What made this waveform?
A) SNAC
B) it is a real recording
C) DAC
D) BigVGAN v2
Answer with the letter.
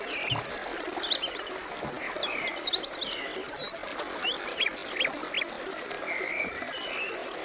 B